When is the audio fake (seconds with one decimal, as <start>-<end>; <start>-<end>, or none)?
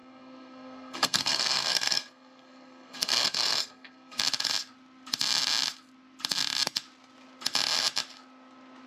0.0-4.2